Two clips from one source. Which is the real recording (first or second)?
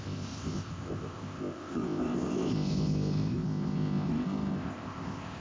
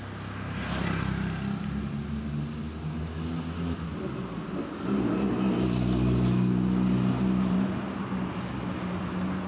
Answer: second